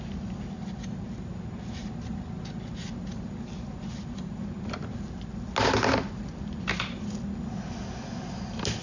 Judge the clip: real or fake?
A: real